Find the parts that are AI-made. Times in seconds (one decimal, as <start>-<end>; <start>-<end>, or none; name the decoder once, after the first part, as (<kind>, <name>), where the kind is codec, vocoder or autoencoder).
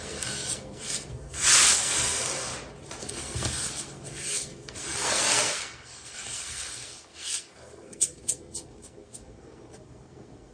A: 0.0-2.5 (codec, SNAC); 3.0-10.5